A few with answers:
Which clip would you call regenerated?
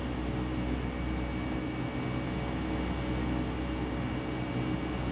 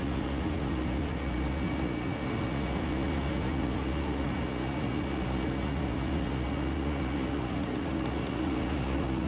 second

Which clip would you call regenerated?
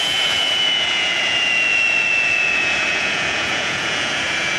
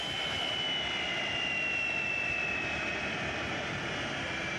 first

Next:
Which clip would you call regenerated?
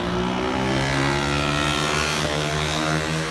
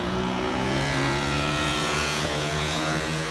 second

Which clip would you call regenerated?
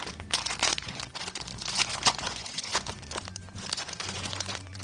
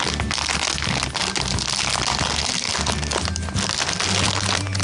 first